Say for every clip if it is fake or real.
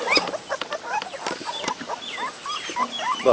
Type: real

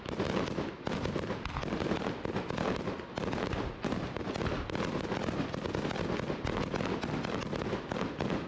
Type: real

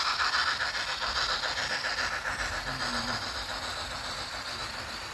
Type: real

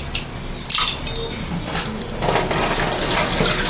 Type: real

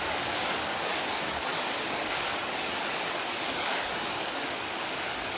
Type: fake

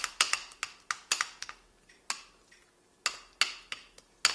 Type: real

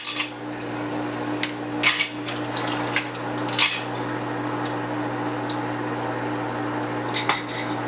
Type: real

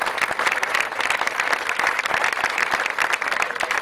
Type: real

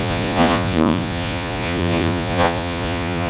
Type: fake